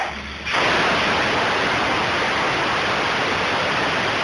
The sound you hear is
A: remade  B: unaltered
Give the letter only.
B